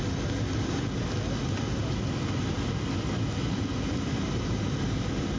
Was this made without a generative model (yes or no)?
yes